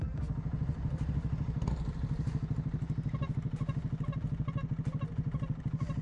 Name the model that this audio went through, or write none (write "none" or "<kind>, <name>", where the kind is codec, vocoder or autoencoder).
none